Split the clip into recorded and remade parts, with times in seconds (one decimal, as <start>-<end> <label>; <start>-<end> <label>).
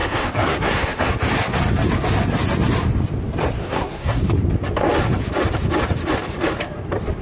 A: 0.0-1.1 remade; 1.1-3.6 recorded; 3.6-4.2 remade; 4.2-7.2 recorded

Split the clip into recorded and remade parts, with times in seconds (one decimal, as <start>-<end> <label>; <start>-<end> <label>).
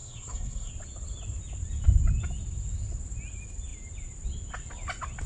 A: 0.0-0.7 remade; 0.7-5.3 recorded